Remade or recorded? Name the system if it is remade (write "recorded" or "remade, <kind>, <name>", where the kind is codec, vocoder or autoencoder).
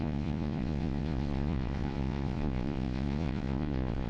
remade, vocoder, Vocos